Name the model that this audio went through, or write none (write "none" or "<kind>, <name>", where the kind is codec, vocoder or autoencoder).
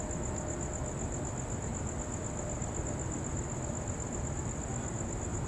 none